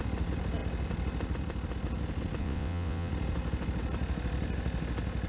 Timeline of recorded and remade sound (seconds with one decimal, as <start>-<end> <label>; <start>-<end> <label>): 0.0-2.4 recorded; 2.4-3.1 remade; 3.1-5.3 recorded